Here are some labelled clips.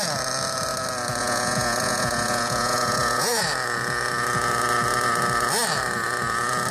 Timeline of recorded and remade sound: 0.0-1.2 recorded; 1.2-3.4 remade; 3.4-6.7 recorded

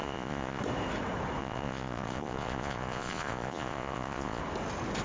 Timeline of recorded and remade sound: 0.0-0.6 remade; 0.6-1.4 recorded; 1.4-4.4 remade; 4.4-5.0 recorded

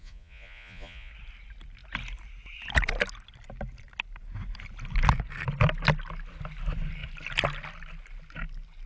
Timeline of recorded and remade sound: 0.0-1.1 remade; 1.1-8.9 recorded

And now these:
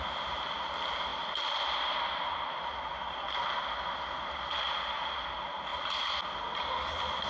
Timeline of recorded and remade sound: 0.0-7.3 recorded

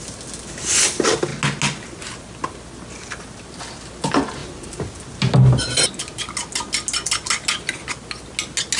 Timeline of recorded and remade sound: 0.0-8.8 recorded

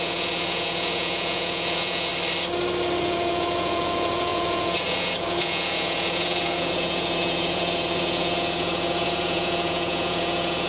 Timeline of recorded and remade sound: 0.0-2.1 remade; 2.1-3.0 recorded; 3.0-10.7 remade